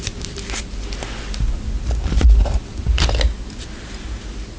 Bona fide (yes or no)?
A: yes